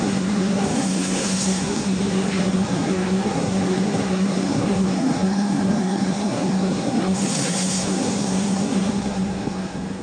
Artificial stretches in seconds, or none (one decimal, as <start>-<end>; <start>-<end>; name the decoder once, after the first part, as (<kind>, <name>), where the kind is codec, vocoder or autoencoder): 0.0-10.0 (codec, SNAC)